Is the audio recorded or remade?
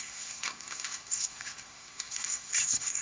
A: remade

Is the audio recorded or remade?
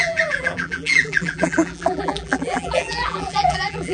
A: remade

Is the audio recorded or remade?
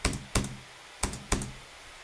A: recorded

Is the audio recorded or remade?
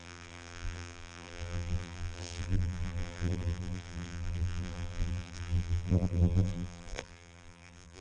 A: remade